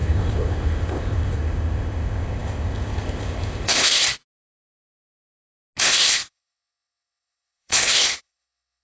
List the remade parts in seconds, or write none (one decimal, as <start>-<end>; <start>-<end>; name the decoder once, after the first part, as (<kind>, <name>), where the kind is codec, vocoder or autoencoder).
0.0-4.0 (codec, ZipCodec); 5.8-8.8